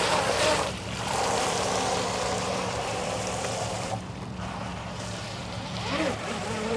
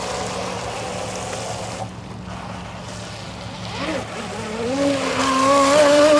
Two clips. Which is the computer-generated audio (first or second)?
first